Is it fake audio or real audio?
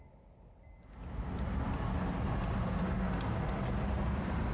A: real